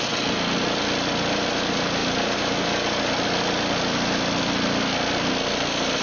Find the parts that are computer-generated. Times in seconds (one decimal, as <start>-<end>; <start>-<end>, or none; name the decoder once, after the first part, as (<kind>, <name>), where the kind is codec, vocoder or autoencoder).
none